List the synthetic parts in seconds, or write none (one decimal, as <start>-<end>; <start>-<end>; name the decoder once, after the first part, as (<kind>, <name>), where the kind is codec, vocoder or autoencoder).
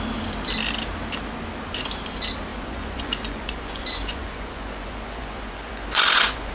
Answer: 2.5-6.5 (vocoder, Vocos)